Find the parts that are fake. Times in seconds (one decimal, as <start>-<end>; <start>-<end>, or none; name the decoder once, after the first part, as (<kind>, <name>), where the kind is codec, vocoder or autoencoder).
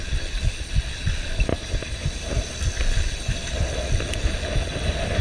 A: 1.5-2.5 (vocoder, BigVGAN v2)